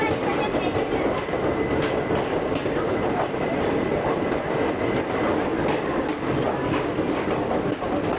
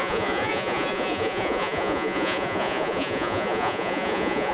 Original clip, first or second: first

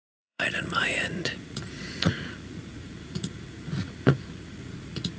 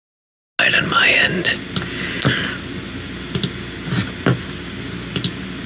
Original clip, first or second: second